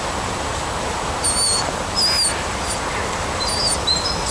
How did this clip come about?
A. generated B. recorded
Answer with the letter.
B